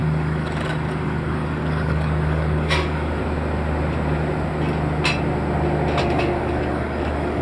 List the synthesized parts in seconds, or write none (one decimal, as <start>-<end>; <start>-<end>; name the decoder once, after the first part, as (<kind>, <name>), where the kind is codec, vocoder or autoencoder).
0.0-3.2 (codec, DAC); 6.0-7.4